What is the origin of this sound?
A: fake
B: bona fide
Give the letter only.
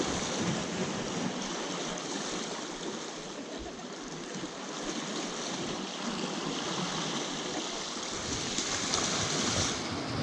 B